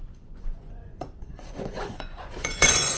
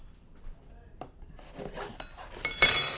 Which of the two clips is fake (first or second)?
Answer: first